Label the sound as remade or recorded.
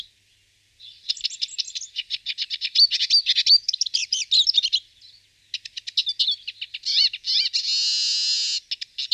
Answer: recorded